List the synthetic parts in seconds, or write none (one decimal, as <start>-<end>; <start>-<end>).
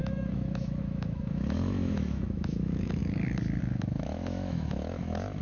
0.0-3.0; 3.6-5.4